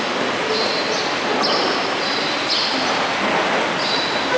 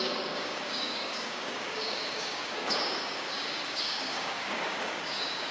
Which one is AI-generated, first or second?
second